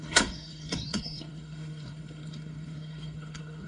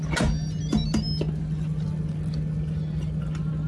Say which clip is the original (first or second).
second